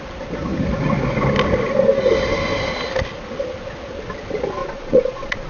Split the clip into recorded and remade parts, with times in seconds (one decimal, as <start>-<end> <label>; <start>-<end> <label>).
0.0-4.6 recorded; 4.6-5.5 remade